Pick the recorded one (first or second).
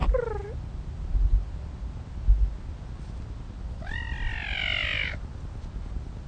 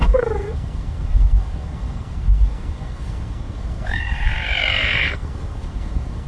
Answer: first